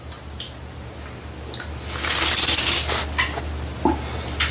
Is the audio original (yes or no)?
yes